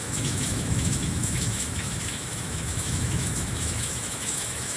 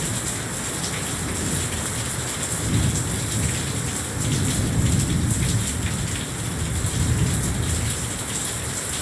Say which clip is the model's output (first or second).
first